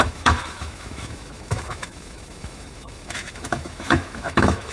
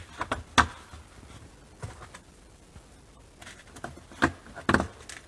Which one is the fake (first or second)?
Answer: first